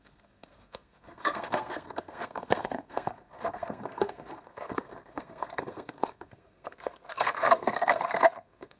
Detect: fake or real fake